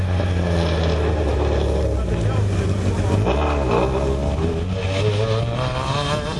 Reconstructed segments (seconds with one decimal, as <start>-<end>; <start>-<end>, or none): none